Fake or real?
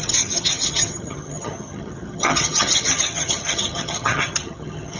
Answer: fake